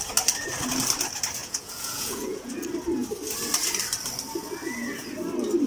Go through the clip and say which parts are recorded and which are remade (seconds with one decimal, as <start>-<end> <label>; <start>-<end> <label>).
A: 0.0-1.4 recorded; 1.4-2.5 remade; 2.5-5.7 recorded